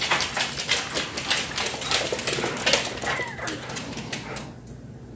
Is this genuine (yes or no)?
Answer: yes